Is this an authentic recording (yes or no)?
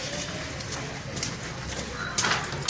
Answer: yes